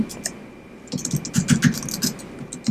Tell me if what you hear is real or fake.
real